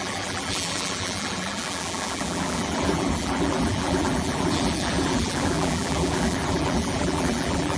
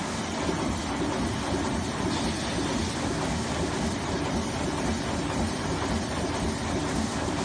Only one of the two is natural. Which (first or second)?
second